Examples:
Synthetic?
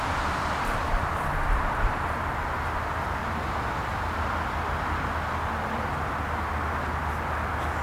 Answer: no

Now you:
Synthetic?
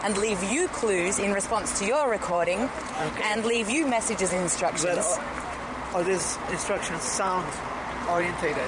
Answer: yes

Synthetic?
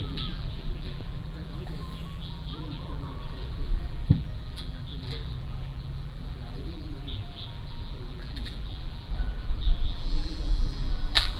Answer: yes